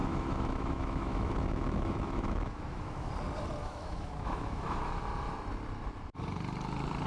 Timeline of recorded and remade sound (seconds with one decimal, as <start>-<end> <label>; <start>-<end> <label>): 0.0-3.1 remade; 3.1-3.6 recorded; 3.6-5.0 remade; 5.0-7.1 recorded